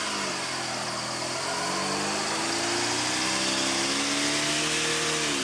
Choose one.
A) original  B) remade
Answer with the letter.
A